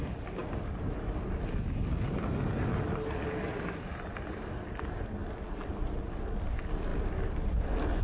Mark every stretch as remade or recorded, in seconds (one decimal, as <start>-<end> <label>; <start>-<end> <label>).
0.0-8.0 recorded